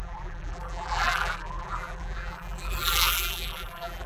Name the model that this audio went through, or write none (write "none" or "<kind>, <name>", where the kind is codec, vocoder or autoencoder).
vocoder, BigVGAN v2